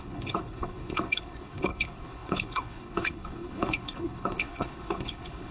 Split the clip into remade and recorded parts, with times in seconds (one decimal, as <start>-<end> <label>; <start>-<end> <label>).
0.0-5.5 remade